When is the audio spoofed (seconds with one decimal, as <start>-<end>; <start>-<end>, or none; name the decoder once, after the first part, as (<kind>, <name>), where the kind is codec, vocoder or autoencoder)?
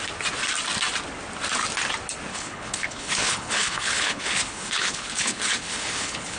2.3-6.4 (codec, HILCodec)